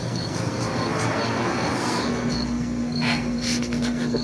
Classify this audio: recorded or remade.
remade